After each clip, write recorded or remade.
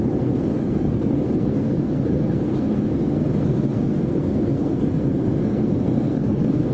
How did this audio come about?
remade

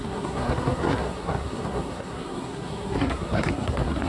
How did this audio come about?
remade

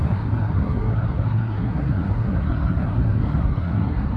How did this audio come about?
remade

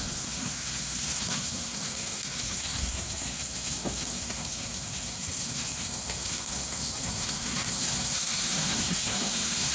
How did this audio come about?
remade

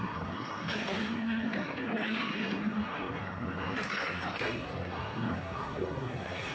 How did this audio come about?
remade